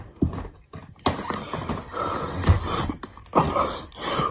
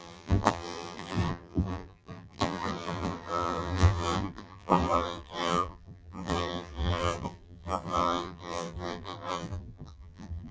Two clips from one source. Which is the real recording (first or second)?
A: first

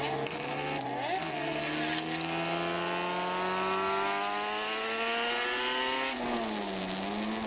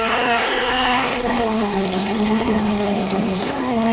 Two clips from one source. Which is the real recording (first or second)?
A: first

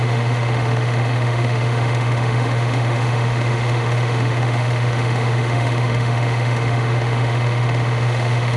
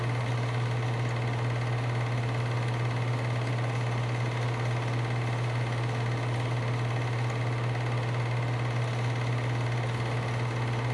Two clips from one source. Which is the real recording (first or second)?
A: second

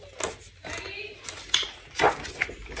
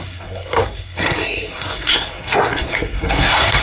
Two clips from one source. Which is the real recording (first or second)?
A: first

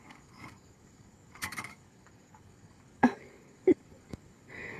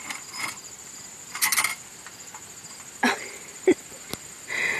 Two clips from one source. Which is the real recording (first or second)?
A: second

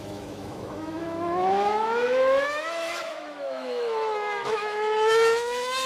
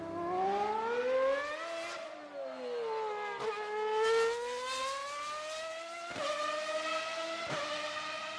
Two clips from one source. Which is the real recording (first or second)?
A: second